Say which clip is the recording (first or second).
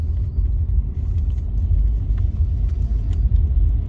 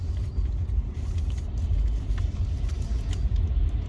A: first